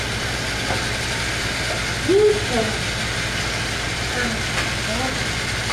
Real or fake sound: real